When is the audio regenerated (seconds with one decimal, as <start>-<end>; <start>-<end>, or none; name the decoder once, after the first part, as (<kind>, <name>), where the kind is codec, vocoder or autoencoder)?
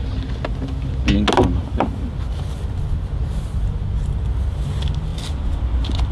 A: 1.6-3.6 (vocoder, BigVGAN v2)